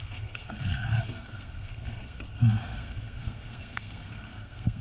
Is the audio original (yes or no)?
no